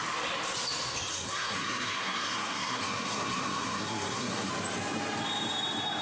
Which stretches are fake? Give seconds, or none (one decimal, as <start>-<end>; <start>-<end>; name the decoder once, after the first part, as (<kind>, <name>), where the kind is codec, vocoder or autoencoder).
1.1-4.5 (codec, SNAC)